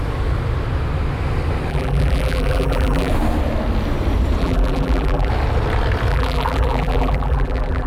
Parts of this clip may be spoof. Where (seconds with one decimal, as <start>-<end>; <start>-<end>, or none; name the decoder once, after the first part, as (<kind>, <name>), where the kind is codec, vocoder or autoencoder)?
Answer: 1.7-3.1 (vocoder, BigVGAN v2); 4.4-5.3; 6.1-7.9